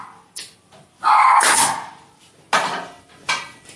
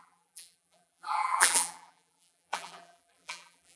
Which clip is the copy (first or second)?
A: second